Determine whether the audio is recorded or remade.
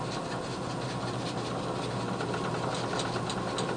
recorded